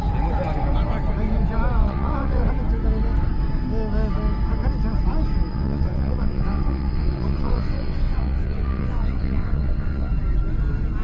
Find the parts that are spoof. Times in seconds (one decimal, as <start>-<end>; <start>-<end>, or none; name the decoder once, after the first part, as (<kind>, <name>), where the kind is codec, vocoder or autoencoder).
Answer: 1.8-2.5 (vocoder, WaveNeXt); 5.5-10.1